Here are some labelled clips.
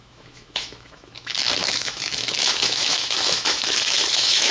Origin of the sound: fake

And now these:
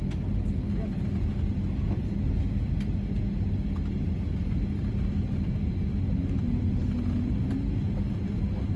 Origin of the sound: real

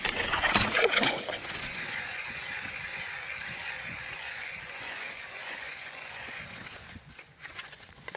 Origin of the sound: fake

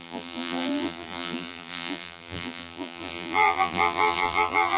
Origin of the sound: fake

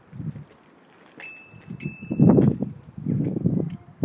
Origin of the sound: real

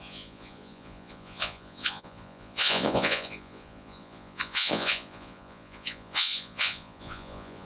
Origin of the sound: fake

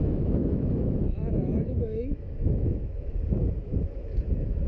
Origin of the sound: fake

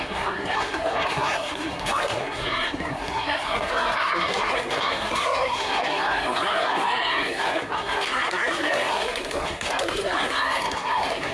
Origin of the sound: fake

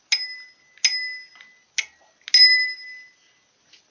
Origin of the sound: real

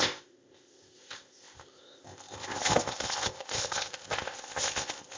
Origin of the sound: fake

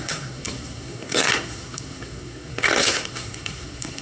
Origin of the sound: fake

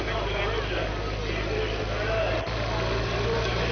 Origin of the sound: real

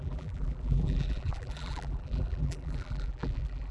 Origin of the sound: fake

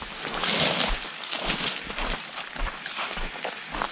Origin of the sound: real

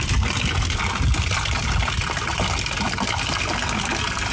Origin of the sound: real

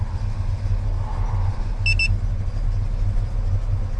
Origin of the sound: real